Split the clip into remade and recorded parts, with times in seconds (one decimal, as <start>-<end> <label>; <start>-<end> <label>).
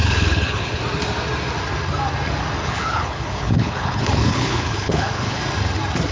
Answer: 0.0-0.8 remade; 0.8-2.6 recorded; 2.6-5.4 remade; 5.4-6.1 recorded